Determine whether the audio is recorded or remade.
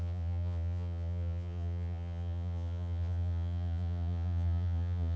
remade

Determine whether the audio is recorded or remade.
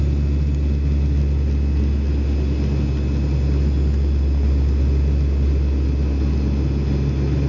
recorded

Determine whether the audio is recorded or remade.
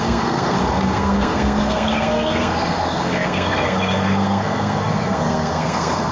remade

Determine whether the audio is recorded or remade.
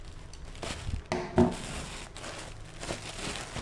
recorded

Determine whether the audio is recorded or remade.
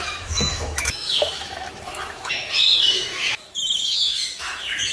remade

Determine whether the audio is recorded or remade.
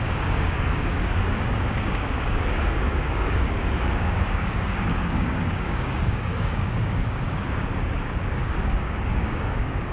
remade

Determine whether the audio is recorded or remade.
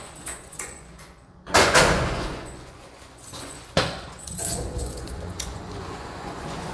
remade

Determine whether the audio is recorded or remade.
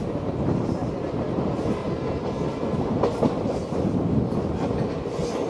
recorded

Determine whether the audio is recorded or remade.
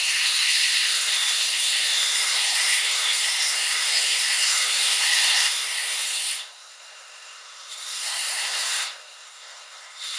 remade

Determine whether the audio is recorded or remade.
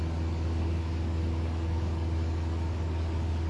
remade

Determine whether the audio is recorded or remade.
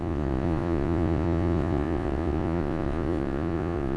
remade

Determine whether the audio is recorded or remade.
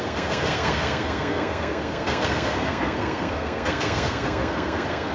remade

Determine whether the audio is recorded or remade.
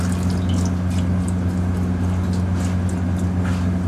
recorded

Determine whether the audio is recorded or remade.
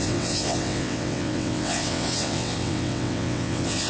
remade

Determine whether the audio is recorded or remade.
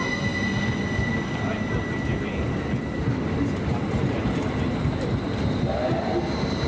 recorded